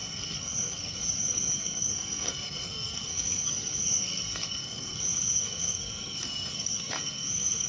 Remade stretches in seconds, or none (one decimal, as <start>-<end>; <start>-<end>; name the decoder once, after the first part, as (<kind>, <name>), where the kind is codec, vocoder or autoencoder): 0.0-7.7 (codec, SNAC)